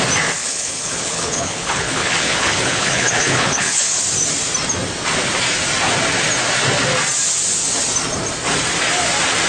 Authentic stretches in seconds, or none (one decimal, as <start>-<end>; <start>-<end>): 0.0-0.4; 4.0-9.5